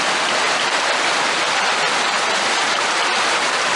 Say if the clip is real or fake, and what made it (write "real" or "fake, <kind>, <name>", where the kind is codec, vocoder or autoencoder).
real